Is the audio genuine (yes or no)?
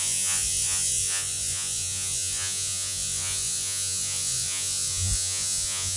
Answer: no